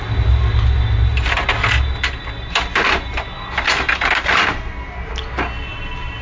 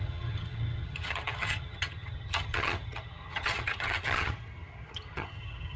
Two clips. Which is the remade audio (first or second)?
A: second